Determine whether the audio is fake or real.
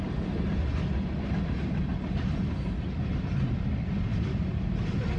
real